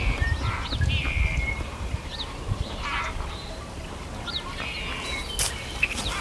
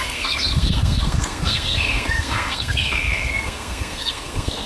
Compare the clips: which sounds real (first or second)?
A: first